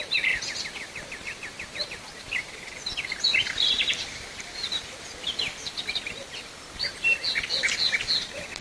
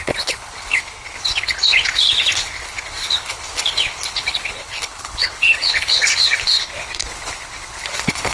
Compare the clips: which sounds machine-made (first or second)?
second